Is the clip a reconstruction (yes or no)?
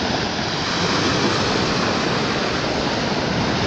no